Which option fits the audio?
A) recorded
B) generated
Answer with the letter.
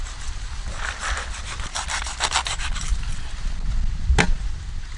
A